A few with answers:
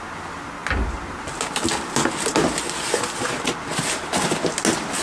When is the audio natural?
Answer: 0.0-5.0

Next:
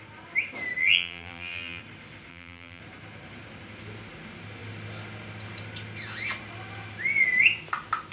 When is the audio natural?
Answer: 0.0-0.8; 1.8-2.3; 2.8-8.1

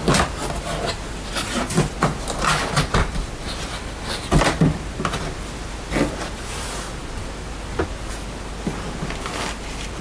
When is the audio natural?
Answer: 0.0-10.0